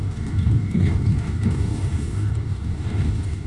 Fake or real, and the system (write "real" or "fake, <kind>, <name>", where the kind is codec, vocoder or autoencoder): fake, codec, DAC